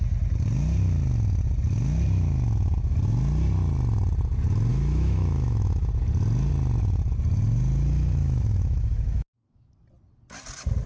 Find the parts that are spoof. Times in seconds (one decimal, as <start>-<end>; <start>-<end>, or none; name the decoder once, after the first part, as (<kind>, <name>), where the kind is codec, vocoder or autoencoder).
4.7-5.9 (autoencoder, DAC-VAE); 8.2-9.7